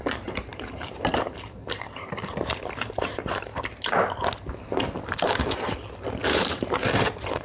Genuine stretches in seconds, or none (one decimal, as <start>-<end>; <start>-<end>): 3.5-6.3